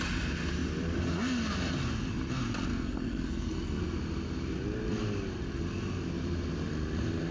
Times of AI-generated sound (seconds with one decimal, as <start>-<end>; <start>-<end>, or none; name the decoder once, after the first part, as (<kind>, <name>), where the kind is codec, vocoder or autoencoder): 2.7-3.8 (codec, SNAC)